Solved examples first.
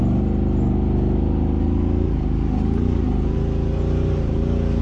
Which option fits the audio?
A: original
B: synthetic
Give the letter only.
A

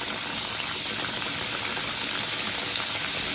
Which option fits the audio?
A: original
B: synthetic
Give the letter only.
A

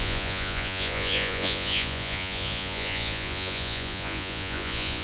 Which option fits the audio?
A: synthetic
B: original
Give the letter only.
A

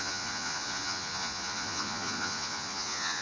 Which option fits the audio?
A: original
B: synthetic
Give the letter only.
B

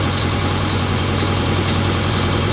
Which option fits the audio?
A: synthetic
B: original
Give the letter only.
A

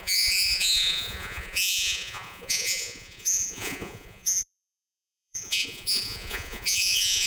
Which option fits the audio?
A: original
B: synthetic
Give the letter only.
B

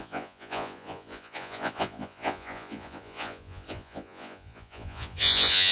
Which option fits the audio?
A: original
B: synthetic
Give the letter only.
B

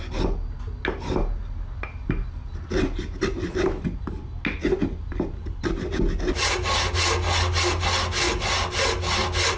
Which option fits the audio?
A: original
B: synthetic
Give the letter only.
A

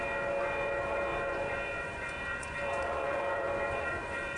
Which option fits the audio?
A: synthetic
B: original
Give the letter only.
A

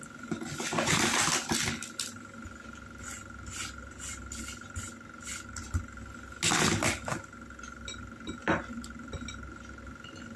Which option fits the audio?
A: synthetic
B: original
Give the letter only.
B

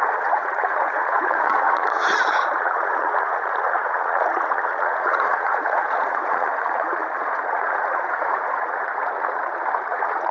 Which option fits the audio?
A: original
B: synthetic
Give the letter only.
B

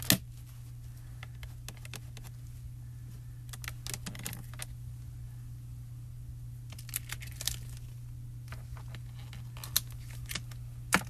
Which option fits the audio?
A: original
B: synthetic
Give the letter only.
A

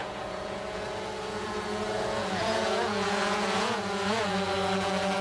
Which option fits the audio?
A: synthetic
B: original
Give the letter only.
A